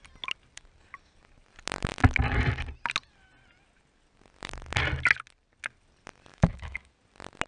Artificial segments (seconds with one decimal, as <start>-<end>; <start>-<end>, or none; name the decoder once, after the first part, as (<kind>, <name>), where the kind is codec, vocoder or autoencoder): 6.3-6.9 (autoencoder, DAC-VAE)

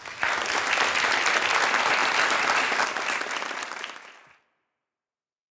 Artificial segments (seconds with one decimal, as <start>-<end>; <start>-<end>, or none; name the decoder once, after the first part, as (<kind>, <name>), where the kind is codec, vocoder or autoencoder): none

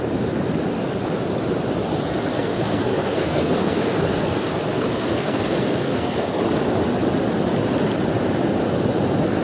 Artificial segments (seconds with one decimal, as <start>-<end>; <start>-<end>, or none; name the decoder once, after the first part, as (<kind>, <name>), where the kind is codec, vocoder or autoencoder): 2.3-6.4 (codec, SNAC)

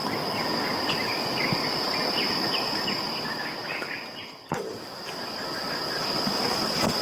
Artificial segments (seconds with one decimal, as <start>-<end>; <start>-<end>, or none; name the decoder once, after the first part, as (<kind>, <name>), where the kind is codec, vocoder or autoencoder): none

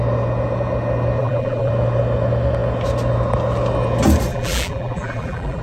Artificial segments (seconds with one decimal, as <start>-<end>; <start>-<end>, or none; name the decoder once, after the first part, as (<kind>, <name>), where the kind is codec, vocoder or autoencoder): 1.2-1.7 (vocoder, BigVGAN v2); 4.3-5.6